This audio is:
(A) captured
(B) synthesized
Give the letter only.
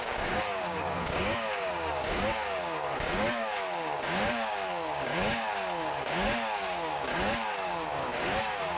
B